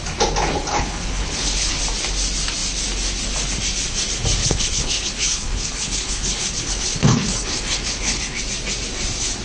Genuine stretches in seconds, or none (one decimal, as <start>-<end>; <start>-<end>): 0.0-0.7; 1.8-4.4; 8.4-9.4